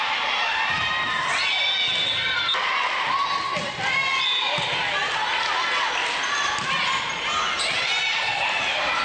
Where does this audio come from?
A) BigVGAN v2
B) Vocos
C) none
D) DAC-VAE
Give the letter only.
C